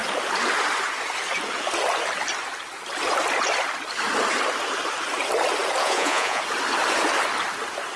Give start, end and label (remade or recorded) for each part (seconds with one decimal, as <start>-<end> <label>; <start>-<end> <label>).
0.0-5.8 recorded; 5.8-6.4 remade; 6.4-8.0 recorded